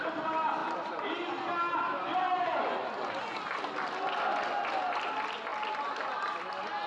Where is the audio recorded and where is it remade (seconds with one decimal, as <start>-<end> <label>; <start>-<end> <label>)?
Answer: 0.0-0.6 recorded; 0.6-2.6 remade; 2.6-6.9 recorded